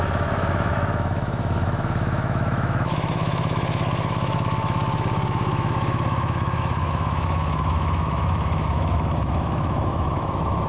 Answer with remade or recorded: remade